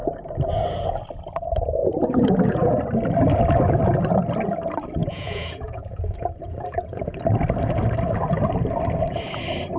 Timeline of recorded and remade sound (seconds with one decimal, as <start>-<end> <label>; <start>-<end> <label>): 0.0-1.8 recorded; 1.8-2.8 remade; 2.8-5.0 recorded; 5.0-7.2 remade; 7.2-9.8 recorded